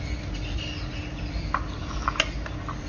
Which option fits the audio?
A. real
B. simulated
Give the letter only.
A